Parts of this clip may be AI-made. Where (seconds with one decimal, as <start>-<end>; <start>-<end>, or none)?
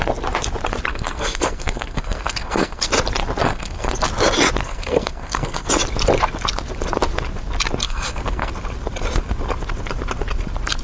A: 0.9-2.9; 3.4-3.9; 4.6-5.7; 7.8-8.5